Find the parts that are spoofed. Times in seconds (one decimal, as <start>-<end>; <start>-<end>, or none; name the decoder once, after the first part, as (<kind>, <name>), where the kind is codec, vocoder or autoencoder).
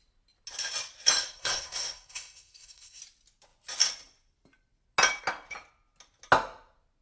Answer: 1.2-3.0 (codec, SNAC)